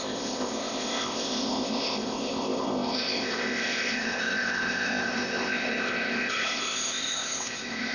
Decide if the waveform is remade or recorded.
remade